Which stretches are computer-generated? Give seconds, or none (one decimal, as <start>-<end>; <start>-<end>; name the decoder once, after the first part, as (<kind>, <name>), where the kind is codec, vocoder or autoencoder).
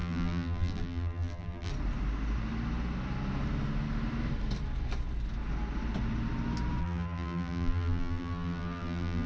0.0-1.7 (vocoder, BigVGAN v2); 6.8-9.3